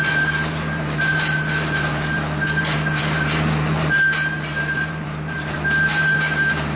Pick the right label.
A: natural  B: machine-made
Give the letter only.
B